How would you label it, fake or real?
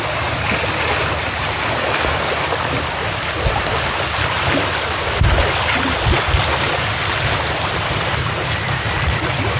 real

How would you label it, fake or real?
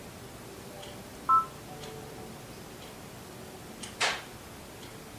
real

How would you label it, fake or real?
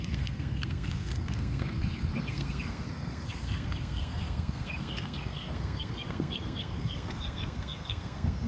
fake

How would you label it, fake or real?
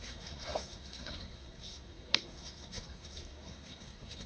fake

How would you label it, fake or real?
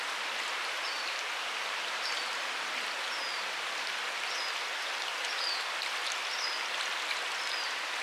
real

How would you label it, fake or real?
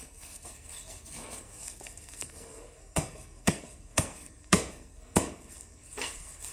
fake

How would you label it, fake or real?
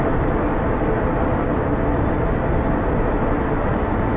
real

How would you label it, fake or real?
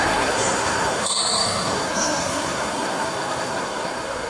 fake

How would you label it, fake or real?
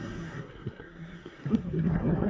fake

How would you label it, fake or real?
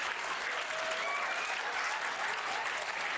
real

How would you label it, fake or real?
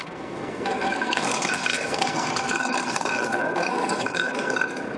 fake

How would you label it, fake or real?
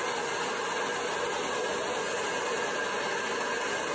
real